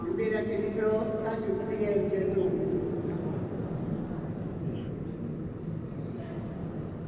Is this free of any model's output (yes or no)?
yes